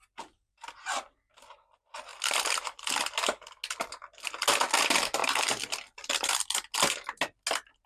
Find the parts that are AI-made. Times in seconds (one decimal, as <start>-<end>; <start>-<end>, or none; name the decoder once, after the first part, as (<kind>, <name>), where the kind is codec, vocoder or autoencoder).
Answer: 2.1-3.0 (vocoder, BigVGAN v2); 5.2-6.4